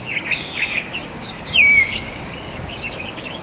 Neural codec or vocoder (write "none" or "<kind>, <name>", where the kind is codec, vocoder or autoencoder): codec, DAC